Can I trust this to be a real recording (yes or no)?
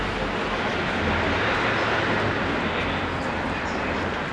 yes